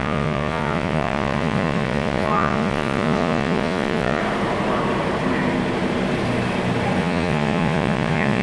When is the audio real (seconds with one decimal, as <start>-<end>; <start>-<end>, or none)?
4.2-7.0